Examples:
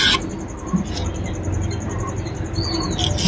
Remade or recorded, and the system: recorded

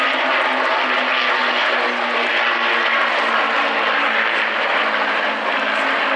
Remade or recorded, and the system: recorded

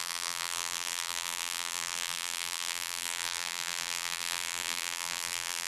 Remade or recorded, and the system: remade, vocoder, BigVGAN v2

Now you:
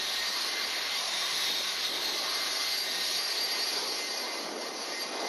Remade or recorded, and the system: remade, vocoder, BigVGAN v2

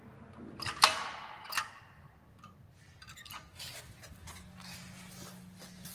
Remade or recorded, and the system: recorded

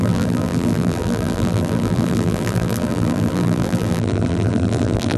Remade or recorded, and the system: remade, vocoder, BigVGAN v2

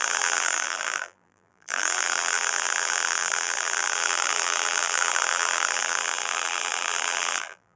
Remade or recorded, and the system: remade, vocoder, BigVGAN v2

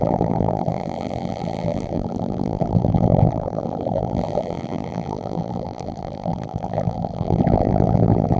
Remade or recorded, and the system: remade, vocoder, BigVGAN v2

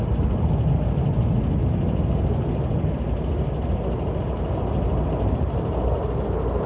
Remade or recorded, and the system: recorded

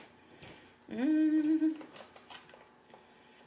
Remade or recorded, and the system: recorded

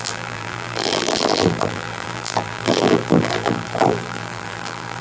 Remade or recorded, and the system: remade, vocoder, BigVGAN v2